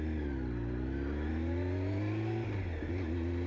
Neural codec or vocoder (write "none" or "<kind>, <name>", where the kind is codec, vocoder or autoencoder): none